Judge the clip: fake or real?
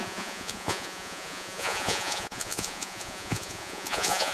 fake